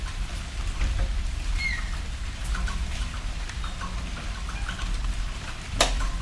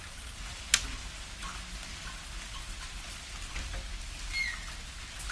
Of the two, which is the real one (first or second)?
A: second